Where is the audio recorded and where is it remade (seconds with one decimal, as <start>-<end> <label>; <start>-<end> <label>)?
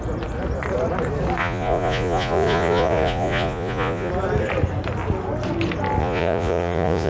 0.0-1.4 recorded; 1.4-4.1 remade; 4.1-6.0 recorded; 6.0-7.1 remade